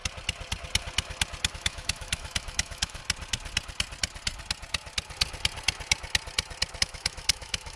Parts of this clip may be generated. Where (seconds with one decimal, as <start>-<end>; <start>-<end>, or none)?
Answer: 1.5-3.0; 6.8-7.8